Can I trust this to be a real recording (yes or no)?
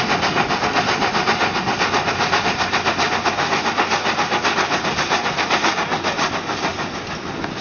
yes